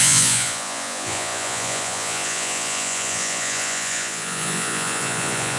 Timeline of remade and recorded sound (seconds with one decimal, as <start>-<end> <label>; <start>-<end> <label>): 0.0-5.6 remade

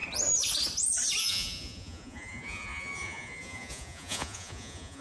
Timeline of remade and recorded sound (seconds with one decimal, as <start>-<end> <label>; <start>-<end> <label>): 0.0-1.2 recorded; 1.2-5.0 remade

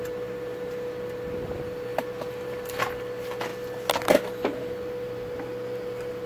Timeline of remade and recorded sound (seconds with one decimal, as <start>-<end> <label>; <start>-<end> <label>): 0.0-6.3 recorded